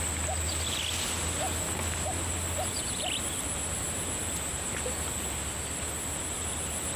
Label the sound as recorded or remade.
recorded